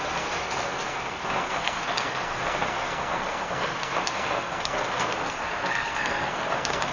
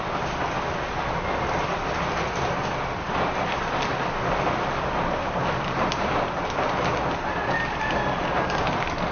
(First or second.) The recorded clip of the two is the second